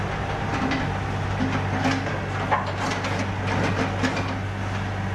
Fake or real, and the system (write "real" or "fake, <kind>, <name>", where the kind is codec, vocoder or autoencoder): real